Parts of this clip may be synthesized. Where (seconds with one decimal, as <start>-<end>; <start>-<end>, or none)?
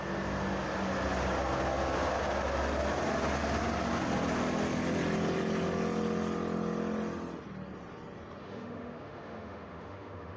8.4-10.4